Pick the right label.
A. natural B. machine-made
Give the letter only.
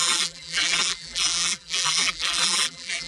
B